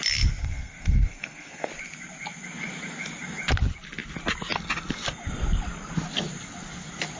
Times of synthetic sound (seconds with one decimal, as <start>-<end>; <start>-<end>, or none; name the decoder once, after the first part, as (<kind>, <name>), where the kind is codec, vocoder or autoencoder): 0.4-1.7 (codec, SNAC)